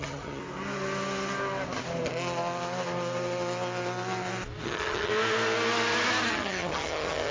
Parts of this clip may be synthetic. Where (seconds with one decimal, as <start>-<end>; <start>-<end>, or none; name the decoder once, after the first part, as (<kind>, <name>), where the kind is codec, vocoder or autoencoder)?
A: 0.0-0.4 (vocoder, HiFi-GAN); 4.6-5.1; 6.3-7.3